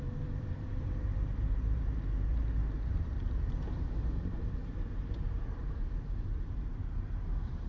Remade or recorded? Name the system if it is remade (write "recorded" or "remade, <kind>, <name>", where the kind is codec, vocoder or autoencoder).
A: remade, vocoder, BigVGAN v2